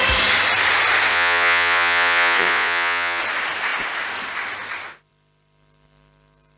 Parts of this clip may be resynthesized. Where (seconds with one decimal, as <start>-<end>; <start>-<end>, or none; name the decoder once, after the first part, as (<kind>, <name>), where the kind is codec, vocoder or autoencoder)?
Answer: 1.1-3.2 (vocoder, Vocos)